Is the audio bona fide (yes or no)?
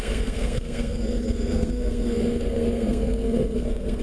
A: no